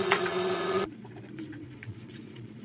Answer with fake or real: fake